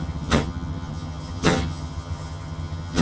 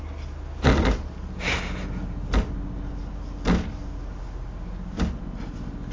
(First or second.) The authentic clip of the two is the second